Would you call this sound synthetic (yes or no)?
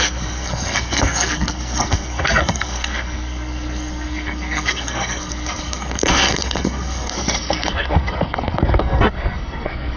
yes